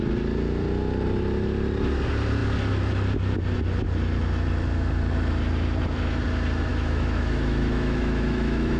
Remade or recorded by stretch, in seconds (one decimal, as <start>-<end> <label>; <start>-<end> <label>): 0.0-6.7 recorded; 6.7-8.8 remade